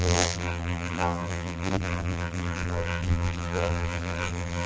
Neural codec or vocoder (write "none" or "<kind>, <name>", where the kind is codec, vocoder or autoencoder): vocoder, BigVGAN v2